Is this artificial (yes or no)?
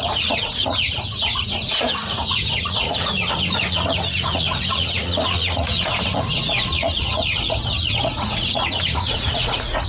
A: yes